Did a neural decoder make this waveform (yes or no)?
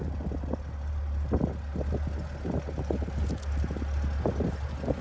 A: no